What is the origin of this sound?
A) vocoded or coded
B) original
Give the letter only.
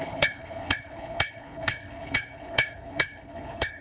A